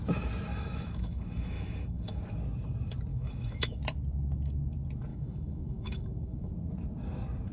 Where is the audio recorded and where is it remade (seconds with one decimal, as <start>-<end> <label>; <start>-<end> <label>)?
0.0-0.5 recorded; 0.5-2.2 remade; 2.2-3.1 recorded; 3.1-3.8 remade; 3.8-5.1 recorded; 5.1-6.5 remade; 6.5-7.5 recorded

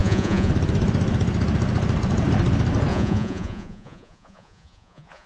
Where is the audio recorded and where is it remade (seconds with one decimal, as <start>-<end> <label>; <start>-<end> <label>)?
0.0-0.5 remade; 0.5-2.9 recorded; 2.9-5.3 remade

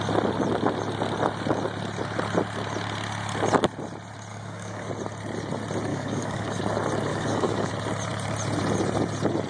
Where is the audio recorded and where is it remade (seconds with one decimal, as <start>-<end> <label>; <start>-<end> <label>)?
0.0-4.3 recorded; 4.3-4.9 remade; 4.9-5.9 recorded; 5.9-6.6 remade; 6.6-7.1 recorded; 7.1-7.7 remade; 7.7-9.5 recorded

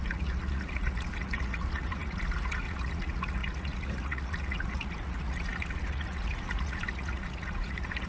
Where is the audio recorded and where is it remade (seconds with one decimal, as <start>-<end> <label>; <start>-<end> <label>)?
0.0-8.1 remade

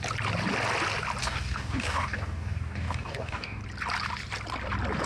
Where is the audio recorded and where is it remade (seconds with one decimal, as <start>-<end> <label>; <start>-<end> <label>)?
0.0-1.2 recorded; 1.2-3.6 remade; 3.6-5.1 recorded